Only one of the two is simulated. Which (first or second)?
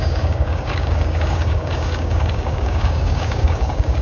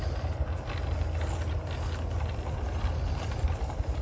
first